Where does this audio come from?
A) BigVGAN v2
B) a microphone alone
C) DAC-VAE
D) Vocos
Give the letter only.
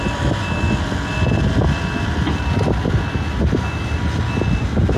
B